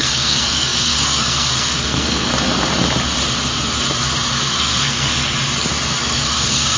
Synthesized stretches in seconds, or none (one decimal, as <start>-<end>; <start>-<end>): 0.0-2.3; 4.4-5.1; 6.0-6.8